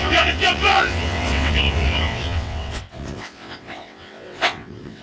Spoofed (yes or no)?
yes